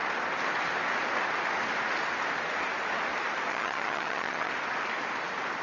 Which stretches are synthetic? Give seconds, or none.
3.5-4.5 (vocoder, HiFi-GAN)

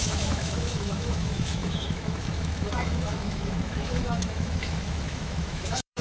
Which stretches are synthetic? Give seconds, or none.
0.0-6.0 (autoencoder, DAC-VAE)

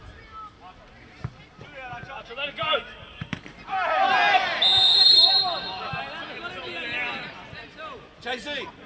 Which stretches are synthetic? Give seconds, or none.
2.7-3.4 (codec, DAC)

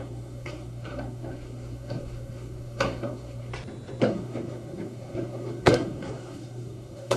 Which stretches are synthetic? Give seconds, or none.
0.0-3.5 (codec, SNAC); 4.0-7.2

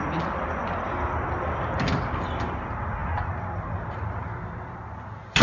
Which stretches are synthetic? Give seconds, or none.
3.0-3.5 (vocoder, BigVGAN v2)

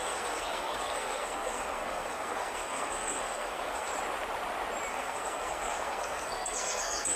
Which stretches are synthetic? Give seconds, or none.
0.0-3.9 (codec, SNAC); 4.9-7.2